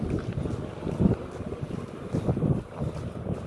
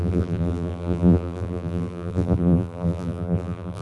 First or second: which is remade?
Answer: second